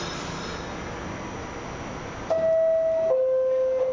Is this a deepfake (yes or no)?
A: no